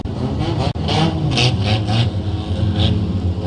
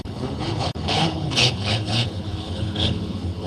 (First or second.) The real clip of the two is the first